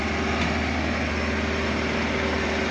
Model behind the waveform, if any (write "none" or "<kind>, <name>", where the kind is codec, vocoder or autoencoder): none